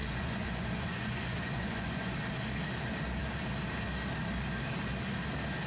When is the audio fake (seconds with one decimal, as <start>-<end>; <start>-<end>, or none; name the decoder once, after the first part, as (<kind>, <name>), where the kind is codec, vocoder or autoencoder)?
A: 0.0-2.1 (vocoder, Vocos)